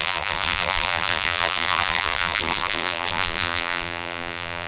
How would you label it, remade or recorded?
remade